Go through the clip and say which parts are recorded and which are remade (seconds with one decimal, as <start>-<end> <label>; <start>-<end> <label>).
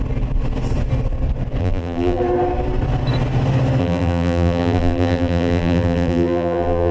0.0-1.6 recorded; 1.6-2.2 remade; 2.2-3.8 recorded; 3.8-6.9 remade